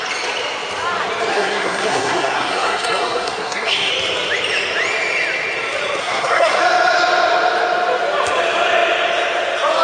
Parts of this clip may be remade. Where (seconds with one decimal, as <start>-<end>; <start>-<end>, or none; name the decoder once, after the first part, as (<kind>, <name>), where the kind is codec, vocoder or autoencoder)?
1.3-3.9 (codec, SNAC); 6.0-6.6